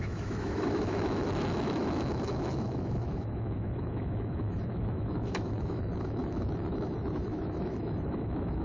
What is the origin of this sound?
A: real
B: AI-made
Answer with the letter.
B